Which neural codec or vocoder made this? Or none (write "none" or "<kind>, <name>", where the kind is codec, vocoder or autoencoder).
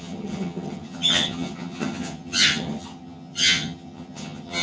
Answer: vocoder, HiFi-GAN